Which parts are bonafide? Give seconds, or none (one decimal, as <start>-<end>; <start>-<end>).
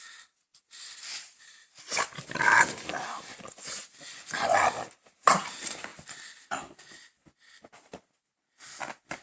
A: 0.0-3.3; 4.6-9.2